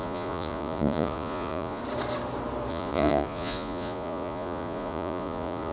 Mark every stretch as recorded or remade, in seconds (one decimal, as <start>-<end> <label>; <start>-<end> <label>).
0.0-1.8 remade; 1.8-2.7 recorded; 2.7-5.7 remade